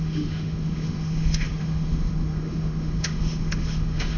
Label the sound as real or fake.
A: fake